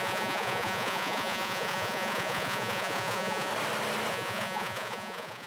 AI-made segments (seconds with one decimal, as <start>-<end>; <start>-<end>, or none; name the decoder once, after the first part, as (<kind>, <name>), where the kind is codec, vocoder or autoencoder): 0.0-3.5 (vocoder, Vocos); 4.1-5.5

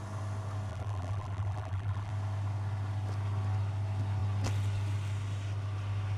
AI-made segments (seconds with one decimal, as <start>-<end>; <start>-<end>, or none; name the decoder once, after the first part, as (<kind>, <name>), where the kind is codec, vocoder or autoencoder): 0.7-2.1 (vocoder, BigVGAN v2)

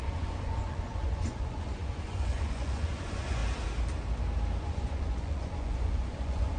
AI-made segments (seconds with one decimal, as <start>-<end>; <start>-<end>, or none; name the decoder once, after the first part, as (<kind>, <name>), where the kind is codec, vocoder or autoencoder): 0.0-3.4 (vocoder, Vocos); 4.6-6.6